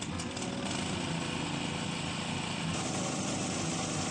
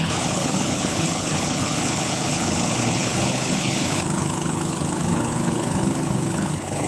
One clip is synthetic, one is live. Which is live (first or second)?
first